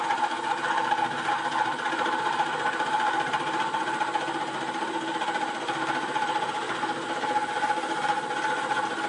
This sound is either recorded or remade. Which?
recorded